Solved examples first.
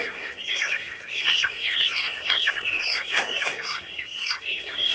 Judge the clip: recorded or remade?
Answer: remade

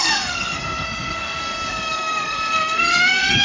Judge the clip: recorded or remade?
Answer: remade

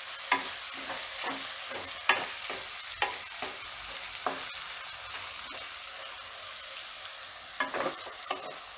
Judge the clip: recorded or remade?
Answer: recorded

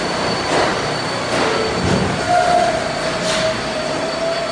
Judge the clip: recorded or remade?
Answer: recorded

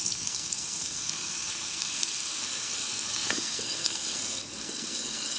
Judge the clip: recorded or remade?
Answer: remade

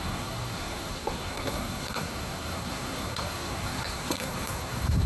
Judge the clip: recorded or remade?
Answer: remade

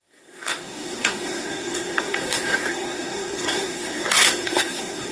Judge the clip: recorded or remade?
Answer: remade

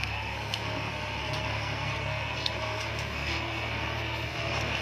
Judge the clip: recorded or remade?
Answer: remade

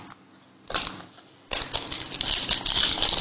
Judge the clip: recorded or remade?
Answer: recorded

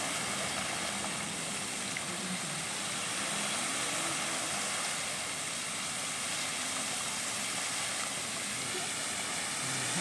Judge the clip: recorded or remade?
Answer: recorded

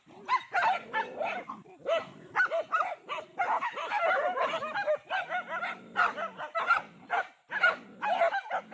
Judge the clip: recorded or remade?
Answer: recorded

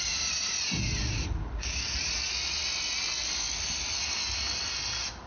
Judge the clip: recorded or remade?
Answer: recorded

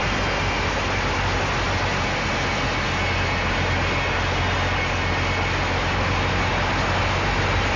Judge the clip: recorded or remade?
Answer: recorded